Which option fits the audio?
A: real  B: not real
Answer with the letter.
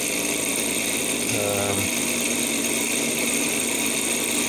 A